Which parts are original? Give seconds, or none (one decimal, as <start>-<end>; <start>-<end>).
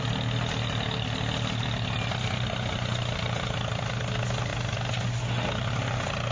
0.0-6.3